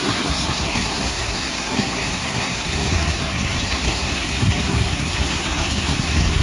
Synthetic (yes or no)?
yes